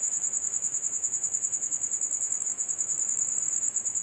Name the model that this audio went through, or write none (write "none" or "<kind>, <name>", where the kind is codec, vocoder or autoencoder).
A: autoencoder, DAC-VAE